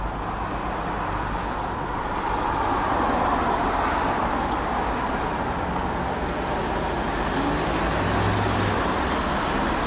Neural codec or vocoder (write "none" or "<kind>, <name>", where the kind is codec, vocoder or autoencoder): none